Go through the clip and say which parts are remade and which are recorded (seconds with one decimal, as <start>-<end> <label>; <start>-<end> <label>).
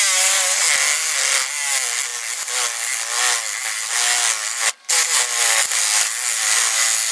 0.0-7.1 recorded